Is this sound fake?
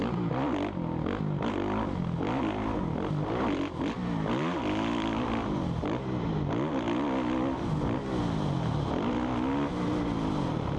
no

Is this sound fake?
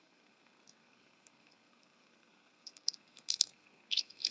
yes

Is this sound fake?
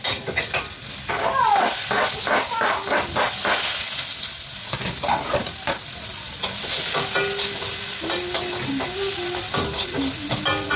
no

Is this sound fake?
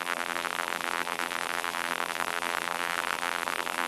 yes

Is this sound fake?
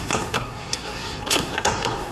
yes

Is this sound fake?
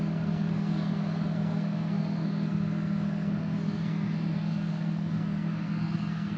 yes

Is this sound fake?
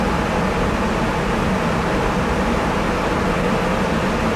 no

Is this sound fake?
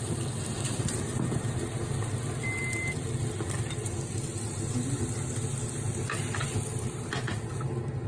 no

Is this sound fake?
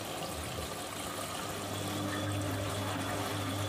no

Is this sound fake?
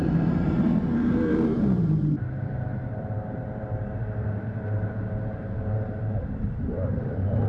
yes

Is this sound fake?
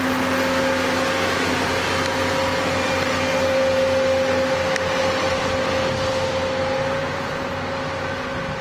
no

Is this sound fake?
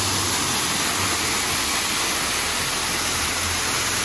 no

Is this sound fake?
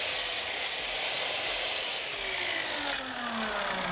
no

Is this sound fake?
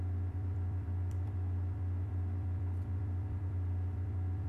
yes